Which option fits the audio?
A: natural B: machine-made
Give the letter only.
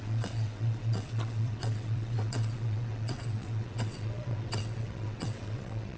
B